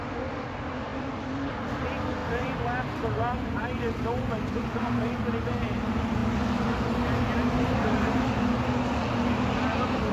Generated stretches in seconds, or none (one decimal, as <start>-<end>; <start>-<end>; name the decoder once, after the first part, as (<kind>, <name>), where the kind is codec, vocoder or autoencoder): none